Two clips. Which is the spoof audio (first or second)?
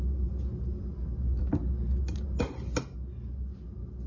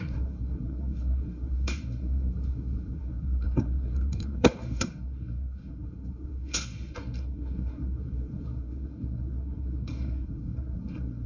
second